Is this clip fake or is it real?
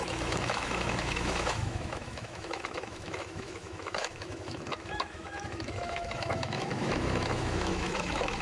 fake